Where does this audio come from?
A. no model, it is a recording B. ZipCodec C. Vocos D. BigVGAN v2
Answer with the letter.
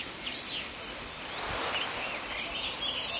A